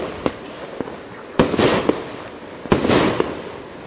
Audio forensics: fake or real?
real